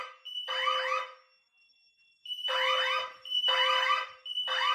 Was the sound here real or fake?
real